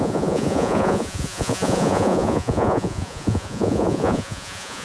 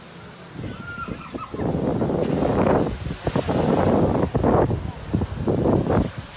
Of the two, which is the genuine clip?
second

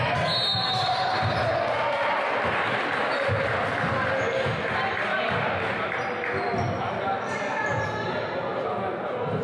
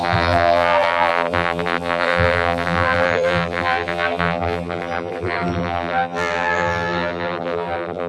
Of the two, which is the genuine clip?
first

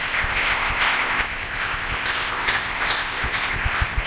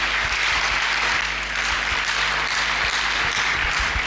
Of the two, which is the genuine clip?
second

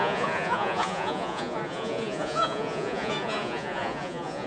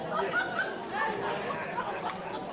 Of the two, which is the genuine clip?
second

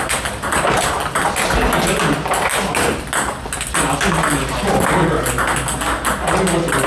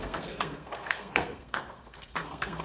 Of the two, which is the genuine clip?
first